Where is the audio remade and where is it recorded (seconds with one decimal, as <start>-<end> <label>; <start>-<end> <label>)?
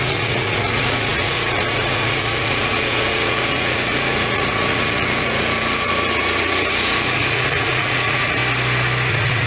0.0-8.4 remade; 8.4-9.1 recorded; 9.1-9.5 remade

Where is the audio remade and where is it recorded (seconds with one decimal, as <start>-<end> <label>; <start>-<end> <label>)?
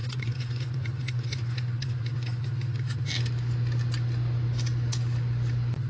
0.0-2.4 remade; 2.4-5.9 recorded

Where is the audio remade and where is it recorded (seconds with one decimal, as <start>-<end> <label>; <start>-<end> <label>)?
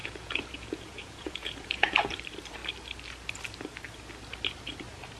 0.0-2.1 remade; 2.1-5.2 recorded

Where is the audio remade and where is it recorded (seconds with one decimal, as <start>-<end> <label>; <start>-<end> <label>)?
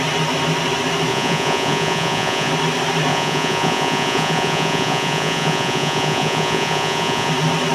0.0-1.1 recorded; 1.1-2.5 remade; 2.5-3.1 recorded; 3.1-7.3 remade; 7.3-7.7 recorded